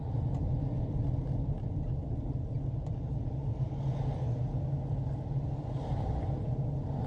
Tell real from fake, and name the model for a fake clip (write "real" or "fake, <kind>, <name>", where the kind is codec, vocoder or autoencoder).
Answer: real